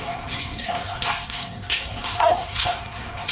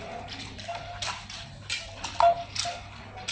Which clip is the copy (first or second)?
first